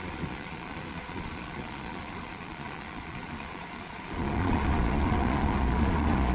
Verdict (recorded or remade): remade